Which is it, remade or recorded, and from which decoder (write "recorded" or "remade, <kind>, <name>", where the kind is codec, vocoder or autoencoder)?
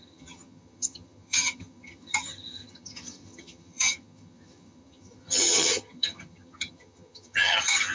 remade, vocoder, HiFi-GAN